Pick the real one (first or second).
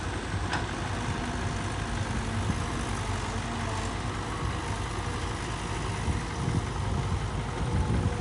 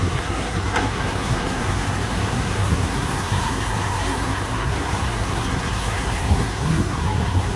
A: first